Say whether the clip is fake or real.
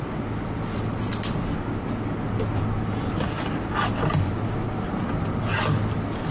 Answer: real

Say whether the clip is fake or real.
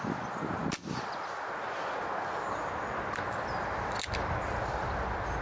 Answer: real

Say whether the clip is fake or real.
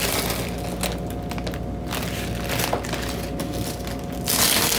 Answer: real